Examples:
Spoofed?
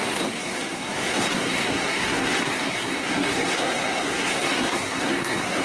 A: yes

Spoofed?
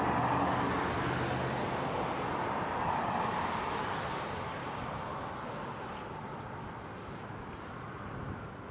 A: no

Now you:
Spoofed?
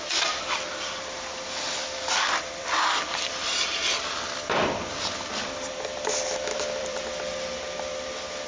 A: yes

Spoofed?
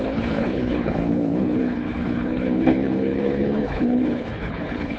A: yes